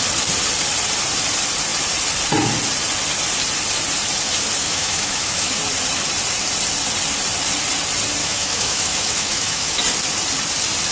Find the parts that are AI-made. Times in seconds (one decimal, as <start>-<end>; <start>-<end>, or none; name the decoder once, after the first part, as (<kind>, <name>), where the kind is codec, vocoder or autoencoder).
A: 4.6-5.6 (autoencoder, DAC-VAE); 8.2-9.8